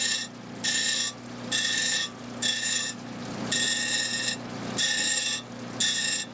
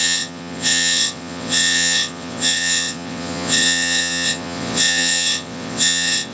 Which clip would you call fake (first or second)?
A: second